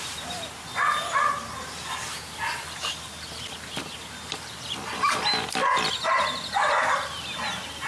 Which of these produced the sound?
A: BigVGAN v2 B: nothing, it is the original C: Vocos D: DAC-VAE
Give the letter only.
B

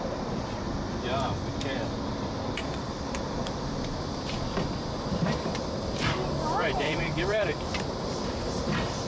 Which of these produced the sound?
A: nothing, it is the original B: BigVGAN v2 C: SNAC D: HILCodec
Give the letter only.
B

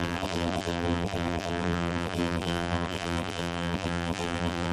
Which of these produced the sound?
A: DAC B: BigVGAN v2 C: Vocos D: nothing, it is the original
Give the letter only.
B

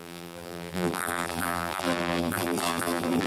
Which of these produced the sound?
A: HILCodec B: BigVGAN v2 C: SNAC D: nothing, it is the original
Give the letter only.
B